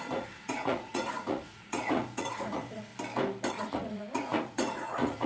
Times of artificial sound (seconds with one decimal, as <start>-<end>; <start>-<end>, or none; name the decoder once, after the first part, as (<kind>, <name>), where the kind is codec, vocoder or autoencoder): 0.0-2.9 (vocoder, Vocos); 3.5-5.3